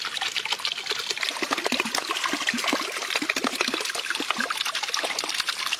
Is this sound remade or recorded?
recorded